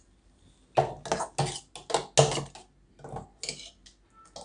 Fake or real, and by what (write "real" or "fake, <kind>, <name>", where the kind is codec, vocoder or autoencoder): real